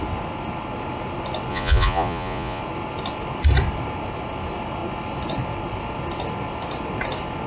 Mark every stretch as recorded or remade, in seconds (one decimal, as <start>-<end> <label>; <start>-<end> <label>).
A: 0.0-1.5 recorded; 1.5-2.6 remade; 2.6-7.5 recorded